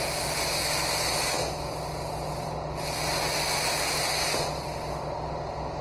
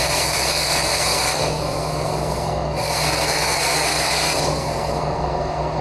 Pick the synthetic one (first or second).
second